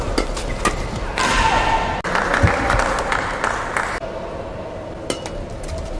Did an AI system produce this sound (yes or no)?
no